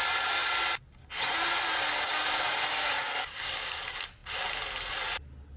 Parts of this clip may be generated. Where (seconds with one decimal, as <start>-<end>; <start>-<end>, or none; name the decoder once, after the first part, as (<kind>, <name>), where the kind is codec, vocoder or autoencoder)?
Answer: 2.1-3.8 (codec, DAC)